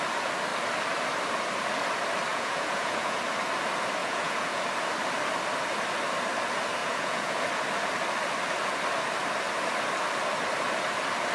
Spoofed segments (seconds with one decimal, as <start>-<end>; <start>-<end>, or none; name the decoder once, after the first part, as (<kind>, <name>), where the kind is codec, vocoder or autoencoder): 2.3-3.2 (vocoder, Vocos); 4.0-4.6; 6.8-7.4